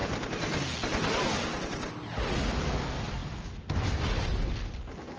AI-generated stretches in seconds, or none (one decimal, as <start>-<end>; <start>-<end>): none